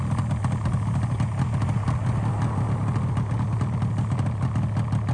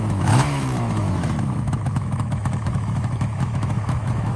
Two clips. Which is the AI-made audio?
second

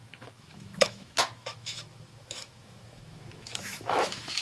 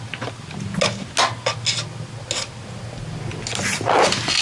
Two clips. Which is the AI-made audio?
first